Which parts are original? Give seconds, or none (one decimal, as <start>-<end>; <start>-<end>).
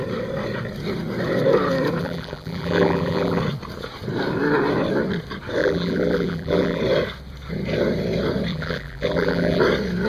0.0-2.0; 3.4-5.6; 6.8-8.5; 9.6-10.1